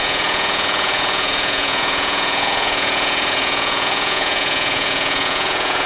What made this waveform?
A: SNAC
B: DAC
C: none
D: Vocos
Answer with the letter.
D